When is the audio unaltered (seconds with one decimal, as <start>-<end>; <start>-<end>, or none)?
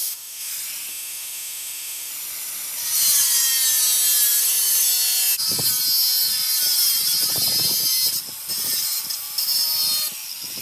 0.5-0.9; 2.1-10.6